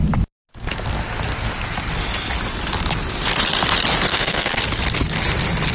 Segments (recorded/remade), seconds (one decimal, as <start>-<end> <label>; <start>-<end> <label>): 0.0-4.1 recorded; 4.1-4.6 remade; 4.6-5.7 recorded